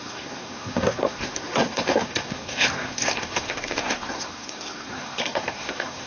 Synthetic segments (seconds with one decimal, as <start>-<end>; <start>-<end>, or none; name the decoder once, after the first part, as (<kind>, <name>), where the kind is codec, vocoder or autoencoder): 0.0-6.1 (codec, SNAC)